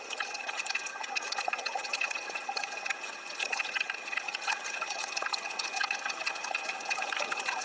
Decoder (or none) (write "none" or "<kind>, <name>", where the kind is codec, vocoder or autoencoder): vocoder, HiFi-GAN